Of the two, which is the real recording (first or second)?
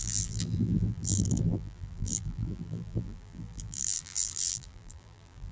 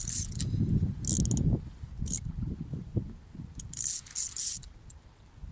second